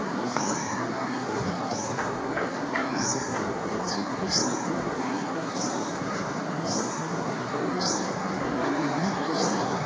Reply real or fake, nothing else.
fake